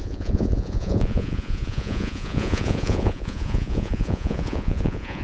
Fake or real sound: fake